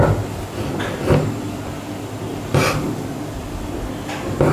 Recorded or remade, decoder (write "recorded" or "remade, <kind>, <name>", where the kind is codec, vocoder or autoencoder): recorded